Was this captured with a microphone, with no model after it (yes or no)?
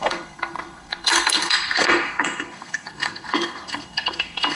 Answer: no